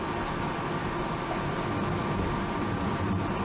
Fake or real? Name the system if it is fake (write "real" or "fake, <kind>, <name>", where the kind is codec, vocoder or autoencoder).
fake, vocoder, BigVGAN v2